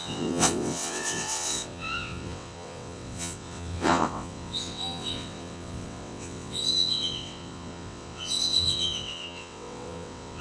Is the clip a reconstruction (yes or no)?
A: yes